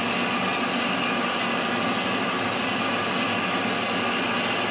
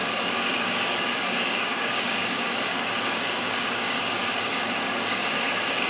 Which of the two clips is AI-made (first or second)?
second